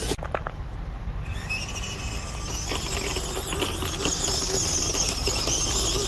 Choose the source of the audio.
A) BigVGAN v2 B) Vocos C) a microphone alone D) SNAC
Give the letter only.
C